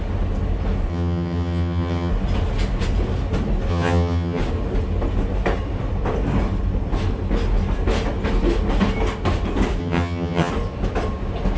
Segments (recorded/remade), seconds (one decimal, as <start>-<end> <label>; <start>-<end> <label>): 0.0-0.9 recorded; 0.9-2.1 remade; 2.1-3.7 recorded; 3.7-4.4 remade; 4.4-9.8 recorded; 9.8-10.5 remade; 10.5-11.6 recorded